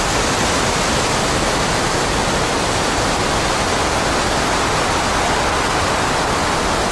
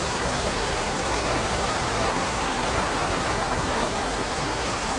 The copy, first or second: second